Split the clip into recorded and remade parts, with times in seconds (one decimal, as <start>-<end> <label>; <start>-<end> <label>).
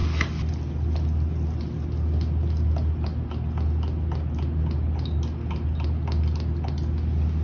0.0-7.4 recorded